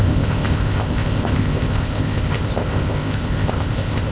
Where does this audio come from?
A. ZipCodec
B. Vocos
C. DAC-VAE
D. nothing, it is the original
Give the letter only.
A